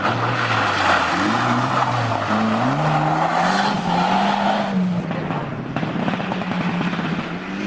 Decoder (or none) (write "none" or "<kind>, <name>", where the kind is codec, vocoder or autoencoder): none